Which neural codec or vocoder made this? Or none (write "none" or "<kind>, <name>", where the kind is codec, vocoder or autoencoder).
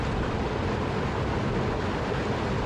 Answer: none